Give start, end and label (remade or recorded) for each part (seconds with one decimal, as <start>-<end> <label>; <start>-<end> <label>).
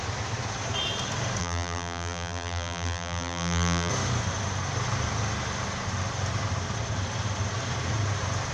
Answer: 0.0-1.4 recorded; 1.4-3.9 remade; 3.9-8.5 recorded